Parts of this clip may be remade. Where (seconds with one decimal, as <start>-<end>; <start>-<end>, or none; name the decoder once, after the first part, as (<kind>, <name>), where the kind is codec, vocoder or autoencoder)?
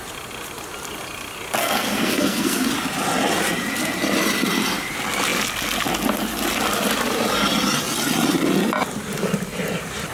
1.6-2.7 (codec, SNAC)